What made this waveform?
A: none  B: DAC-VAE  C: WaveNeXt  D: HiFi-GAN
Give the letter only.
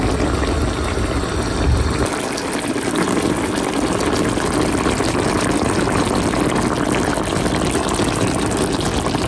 A